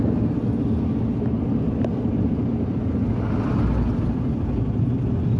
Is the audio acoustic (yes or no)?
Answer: yes